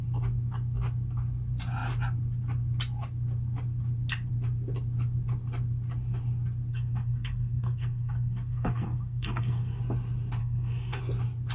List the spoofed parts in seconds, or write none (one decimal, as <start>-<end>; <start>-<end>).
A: 6.7-9.8; 10.4-11.0

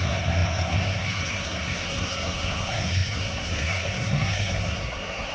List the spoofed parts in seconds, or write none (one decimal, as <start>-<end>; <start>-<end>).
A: 0.0-5.3